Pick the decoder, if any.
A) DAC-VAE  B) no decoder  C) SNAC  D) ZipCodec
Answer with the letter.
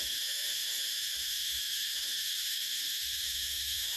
A